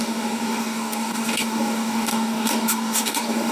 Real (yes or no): no